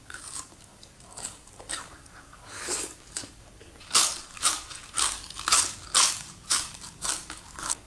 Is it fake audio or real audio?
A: fake